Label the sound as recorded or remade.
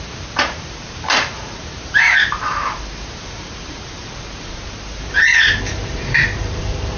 remade